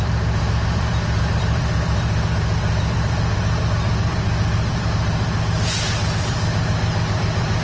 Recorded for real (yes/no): no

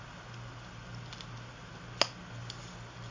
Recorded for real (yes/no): yes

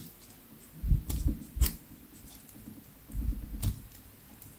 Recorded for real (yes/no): yes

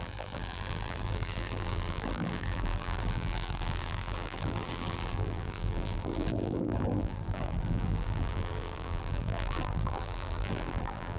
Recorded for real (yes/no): no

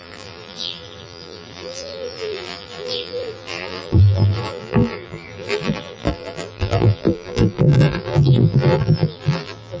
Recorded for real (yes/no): no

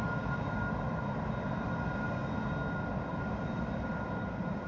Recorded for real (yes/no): yes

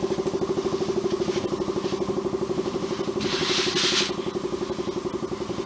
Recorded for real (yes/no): yes